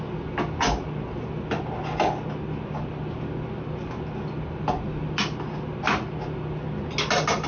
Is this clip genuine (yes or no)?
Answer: yes